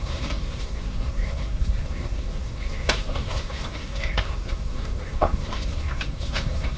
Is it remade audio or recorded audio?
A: remade